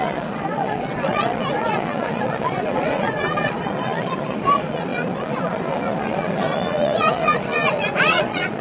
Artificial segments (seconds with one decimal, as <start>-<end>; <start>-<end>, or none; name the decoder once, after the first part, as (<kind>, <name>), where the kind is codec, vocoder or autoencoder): 0.0-8.6 (vocoder, Vocos)